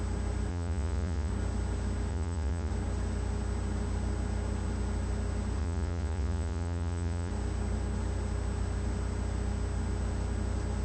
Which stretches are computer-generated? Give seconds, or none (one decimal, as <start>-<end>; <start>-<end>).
0.5-1.3; 2.1-2.7; 5.6-7.3